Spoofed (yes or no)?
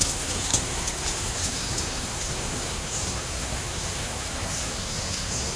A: yes